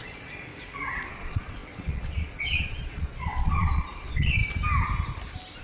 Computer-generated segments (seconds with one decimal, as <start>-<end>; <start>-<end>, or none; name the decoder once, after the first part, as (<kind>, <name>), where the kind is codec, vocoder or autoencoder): 0.0-0.5 (vocoder, Vocos); 1.1-4.4